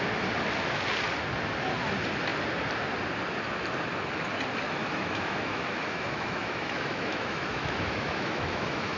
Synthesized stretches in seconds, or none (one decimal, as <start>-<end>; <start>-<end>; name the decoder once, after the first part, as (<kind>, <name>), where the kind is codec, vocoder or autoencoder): 4.8-9.0 (autoencoder, DAC-VAE)